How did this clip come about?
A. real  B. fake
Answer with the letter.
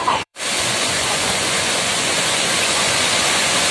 B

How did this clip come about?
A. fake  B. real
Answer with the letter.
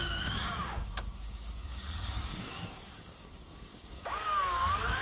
A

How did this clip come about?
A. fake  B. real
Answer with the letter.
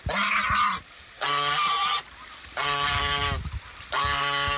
B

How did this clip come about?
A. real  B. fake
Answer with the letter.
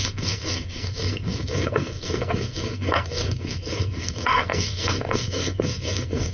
B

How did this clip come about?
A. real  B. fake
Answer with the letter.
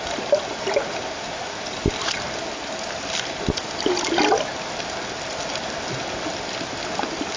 A